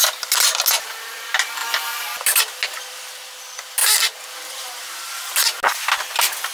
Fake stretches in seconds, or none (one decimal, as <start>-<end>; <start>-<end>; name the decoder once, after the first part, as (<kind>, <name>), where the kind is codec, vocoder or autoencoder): none